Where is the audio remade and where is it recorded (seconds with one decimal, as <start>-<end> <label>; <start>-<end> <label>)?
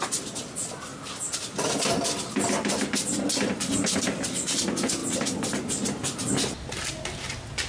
0.0-7.7 recorded